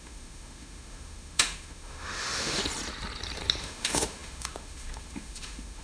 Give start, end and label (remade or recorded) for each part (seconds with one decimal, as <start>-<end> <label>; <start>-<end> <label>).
0.0-2.6 remade; 2.6-3.6 recorded; 3.6-5.8 remade